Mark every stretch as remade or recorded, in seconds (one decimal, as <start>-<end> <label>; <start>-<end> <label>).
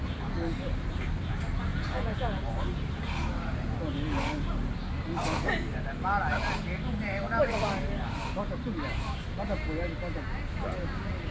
0.0-1.7 recorded; 1.7-2.5 remade; 2.5-11.3 recorded